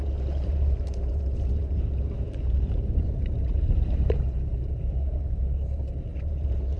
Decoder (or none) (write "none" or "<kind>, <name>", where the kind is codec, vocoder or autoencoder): vocoder, BigVGAN v2